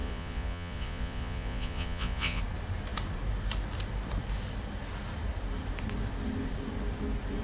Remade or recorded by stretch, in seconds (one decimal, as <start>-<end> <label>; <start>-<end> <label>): 0.0-2.4 remade; 2.4-7.4 recorded